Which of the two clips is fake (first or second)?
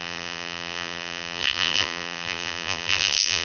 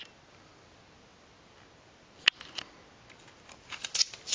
first